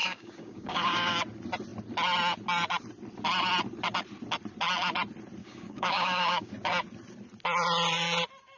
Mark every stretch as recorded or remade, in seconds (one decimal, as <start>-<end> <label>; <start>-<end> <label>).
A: 0.0-1.2 remade; 1.2-5.4 recorded; 5.4-6.5 remade; 6.5-8.6 recorded